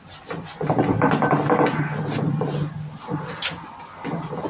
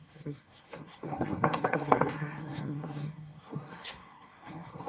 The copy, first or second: second